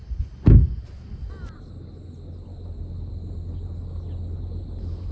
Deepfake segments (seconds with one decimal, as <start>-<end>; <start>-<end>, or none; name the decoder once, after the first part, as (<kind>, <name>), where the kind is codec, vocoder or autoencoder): none